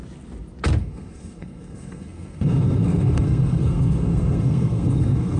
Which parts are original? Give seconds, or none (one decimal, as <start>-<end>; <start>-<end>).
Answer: 0.0-0.8